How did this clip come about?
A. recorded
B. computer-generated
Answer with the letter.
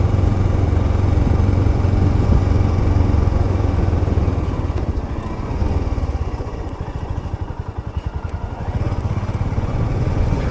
B